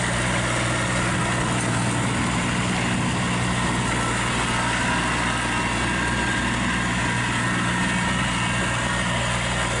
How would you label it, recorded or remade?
recorded